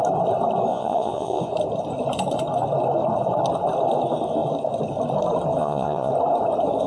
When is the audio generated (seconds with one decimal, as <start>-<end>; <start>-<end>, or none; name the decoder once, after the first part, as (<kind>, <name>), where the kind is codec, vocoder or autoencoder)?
0.7-1.5 (vocoder, Vocos); 5.6-6.1